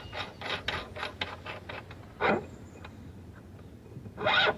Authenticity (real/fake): real